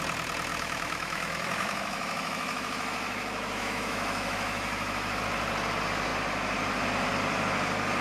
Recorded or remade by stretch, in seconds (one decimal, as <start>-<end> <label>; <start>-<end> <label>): 0.0-0.5 recorded; 0.5-5.2 remade; 5.2-8.0 recorded